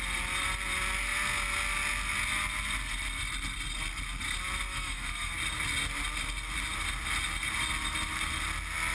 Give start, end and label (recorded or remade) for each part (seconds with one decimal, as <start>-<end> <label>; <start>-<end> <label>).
0.0-4.7 recorded; 4.7-5.3 remade; 5.3-8.9 recorded